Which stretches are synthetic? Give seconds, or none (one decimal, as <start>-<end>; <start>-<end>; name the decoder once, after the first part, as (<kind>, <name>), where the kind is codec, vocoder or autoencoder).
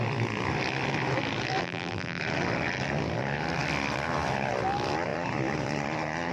1.6-2.2 (vocoder, BigVGAN v2)